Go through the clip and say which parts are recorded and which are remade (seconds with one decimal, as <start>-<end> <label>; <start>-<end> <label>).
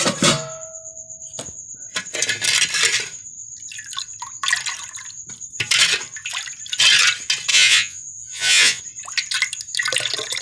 0.0-7.5 recorded; 7.5-8.8 remade; 8.8-10.4 recorded